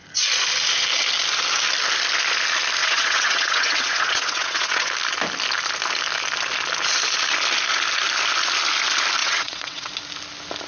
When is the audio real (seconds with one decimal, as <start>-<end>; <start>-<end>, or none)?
0.0-2.8; 4.9-9.2; 9.9-10.7